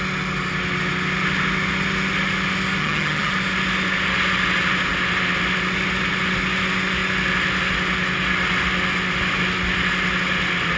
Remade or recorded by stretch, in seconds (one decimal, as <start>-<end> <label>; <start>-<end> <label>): 0.0-2.8 recorded; 2.8-3.3 remade; 3.3-10.8 recorded